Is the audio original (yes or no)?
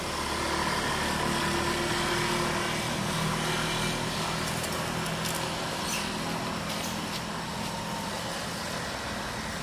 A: yes